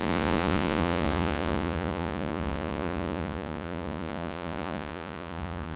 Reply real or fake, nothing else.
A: fake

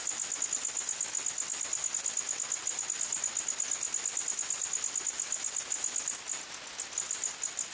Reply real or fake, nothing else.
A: real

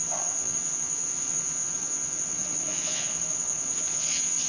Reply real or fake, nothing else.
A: fake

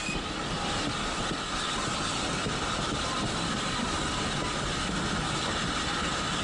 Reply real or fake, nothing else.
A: real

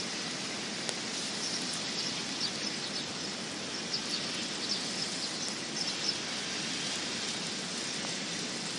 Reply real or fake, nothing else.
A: real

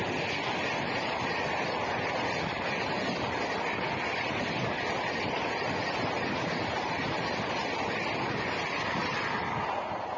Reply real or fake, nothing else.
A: real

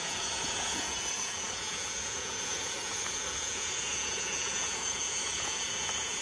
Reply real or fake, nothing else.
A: fake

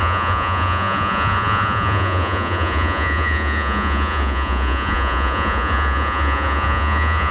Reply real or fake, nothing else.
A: fake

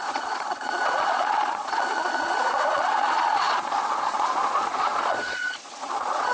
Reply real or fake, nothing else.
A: fake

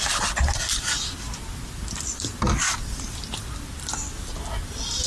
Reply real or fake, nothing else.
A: real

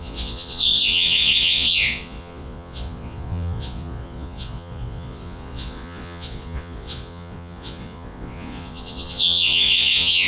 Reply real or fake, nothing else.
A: fake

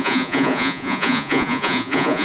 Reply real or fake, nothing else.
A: fake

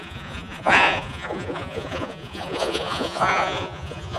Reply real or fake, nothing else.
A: fake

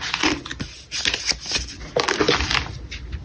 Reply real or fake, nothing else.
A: real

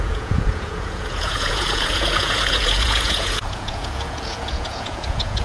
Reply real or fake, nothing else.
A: fake